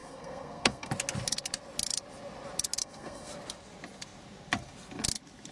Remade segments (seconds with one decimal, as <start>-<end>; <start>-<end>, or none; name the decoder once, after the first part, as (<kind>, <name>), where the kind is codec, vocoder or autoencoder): 0.0-0.9 (codec, SNAC); 2.8-3.3